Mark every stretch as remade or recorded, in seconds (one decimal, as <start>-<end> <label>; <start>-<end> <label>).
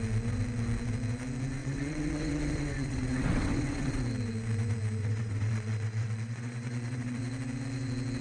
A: 0.0-1.6 recorded; 1.6-4.1 remade; 4.1-5.0 recorded; 5.0-7.2 remade; 7.2-8.2 recorded